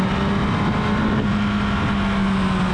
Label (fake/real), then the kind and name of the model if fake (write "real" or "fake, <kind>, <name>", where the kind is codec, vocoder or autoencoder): real